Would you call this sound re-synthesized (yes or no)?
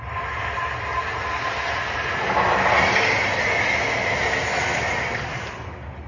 no